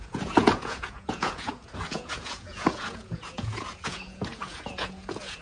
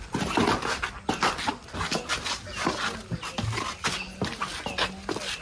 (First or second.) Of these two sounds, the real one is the second